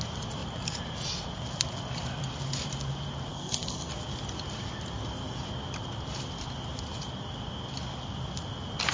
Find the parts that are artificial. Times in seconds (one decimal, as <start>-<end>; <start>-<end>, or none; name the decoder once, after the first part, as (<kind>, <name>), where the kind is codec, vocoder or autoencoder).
3.3-3.9 (codec, SNAC)